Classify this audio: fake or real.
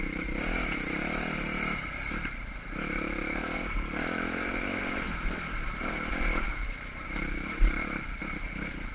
fake